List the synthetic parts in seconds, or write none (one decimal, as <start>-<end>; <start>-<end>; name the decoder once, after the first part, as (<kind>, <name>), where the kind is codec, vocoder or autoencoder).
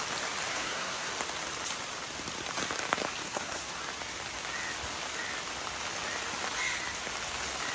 0.5-1.1 (codec, SNAC); 3.2-3.7